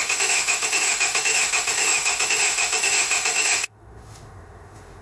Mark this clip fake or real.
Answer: fake